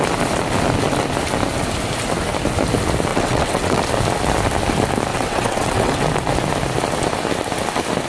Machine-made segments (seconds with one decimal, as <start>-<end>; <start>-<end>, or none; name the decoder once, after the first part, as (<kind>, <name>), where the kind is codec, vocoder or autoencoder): 3.1-3.8 (vocoder, WaveNeXt); 5.1-6.0